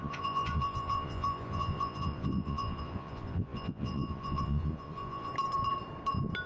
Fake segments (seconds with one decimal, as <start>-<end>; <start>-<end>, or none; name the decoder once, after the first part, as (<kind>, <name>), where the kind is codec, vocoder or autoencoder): 0.0-5.3 (vocoder, Vocos)